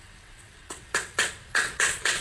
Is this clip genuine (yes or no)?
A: no